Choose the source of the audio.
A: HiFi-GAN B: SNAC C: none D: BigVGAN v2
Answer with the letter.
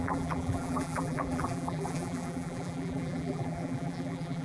D